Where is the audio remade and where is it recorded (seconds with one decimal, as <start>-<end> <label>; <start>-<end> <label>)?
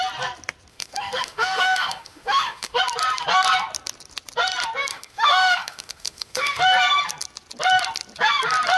0.0-0.7 recorded; 0.7-2.8 remade; 2.8-4.9 recorded; 4.9-6.6 remade; 6.6-8.8 recorded